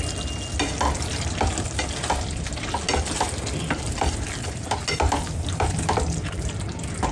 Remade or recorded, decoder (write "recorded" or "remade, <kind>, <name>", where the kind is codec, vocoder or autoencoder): recorded